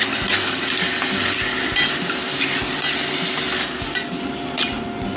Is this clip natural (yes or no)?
yes